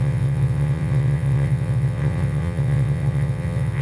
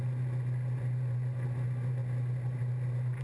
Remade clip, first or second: first